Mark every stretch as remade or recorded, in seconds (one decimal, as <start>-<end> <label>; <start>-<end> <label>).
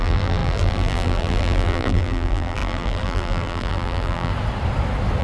0.0-4.3 remade; 4.3-5.2 recorded